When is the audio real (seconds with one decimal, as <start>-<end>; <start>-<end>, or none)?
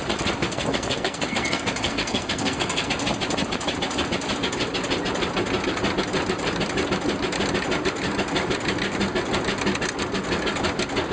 0.0-0.4; 2.9-11.1